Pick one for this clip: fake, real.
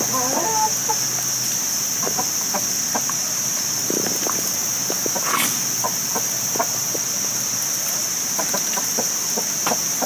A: real